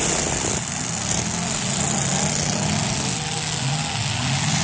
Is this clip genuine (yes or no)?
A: yes